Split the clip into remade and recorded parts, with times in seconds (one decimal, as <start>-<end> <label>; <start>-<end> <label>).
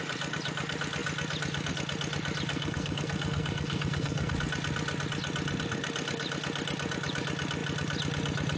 0.0-2.5 recorded; 2.5-4.3 remade; 4.3-8.6 recorded